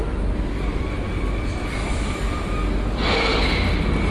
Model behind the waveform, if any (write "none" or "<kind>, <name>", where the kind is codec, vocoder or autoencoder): vocoder, BigVGAN v2